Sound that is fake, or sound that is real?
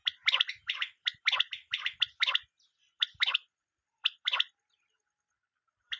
fake